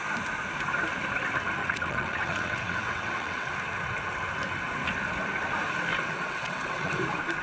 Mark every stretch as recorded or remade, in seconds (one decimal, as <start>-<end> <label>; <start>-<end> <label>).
0.0-1.6 recorded; 1.6-3.5 remade; 3.5-5.9 recorded; 5.9-6.9 remade; 6.9-7.4 recorded